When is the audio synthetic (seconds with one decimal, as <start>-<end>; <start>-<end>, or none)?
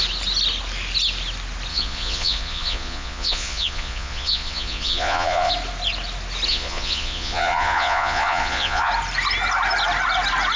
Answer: 1.7-5.5; 6.5-8.9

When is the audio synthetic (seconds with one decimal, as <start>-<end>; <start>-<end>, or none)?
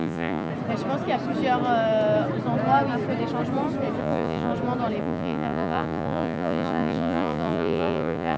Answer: 0.0-0.5; 4.0-4.5; 5.0-8.4